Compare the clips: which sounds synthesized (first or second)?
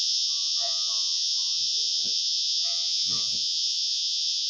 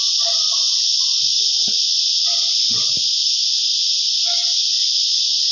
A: first